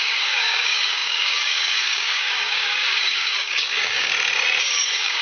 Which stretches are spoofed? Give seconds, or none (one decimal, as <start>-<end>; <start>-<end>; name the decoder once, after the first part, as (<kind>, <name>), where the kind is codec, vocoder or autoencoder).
0.0-4.1 (codec, DAC); 4.6-5.2